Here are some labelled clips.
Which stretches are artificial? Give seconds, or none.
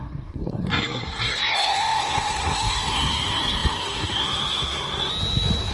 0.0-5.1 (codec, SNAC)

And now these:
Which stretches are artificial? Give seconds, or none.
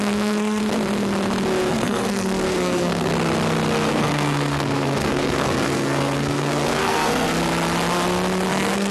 0.0-0.6 (codec, SNAC); 1.7-3.1; 3.9-7.4; 8.5-8.9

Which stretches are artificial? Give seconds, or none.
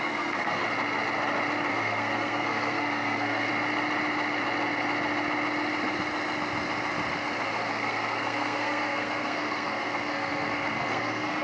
0.0-0.6 (codec, SNAC); 1.7-3.5; 7.7-11.4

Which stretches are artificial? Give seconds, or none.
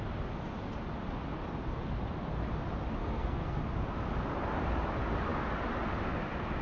3.0-3.6 (codec, SNAC)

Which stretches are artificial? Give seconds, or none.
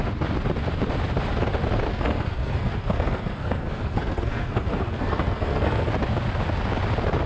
1.9-5.9 (codec, SNAC)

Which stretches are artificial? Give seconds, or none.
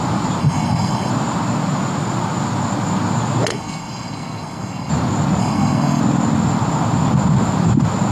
0.4-1.1 (codec, SNAC); 3.5-4.9; 5.4-6.0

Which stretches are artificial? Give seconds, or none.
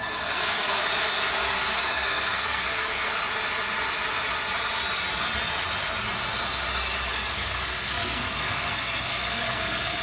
0.0-0.8 (codec, SNAC); 1.3-3.1; 7.1-10.0